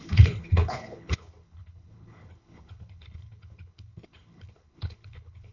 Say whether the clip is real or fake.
fake